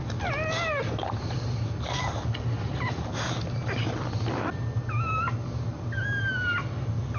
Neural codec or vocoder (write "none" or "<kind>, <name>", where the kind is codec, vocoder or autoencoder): none